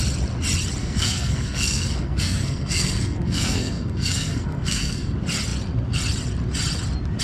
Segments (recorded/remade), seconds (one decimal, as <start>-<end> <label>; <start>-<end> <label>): 0.0-0.8 recorded; 0.8-5.1 remade; 5.1-7.2 recorded